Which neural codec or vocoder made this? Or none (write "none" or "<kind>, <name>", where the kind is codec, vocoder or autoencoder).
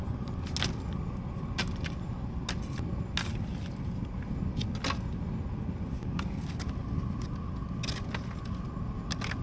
none